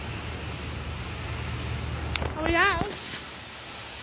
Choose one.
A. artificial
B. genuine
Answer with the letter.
B